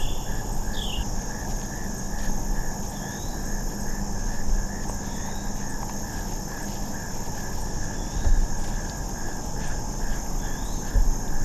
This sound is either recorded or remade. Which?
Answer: recorded